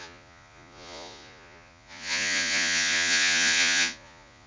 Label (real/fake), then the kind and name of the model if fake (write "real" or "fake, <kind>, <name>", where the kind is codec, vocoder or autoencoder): fake, vocoder, Vocos